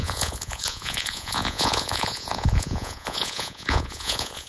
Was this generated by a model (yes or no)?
yes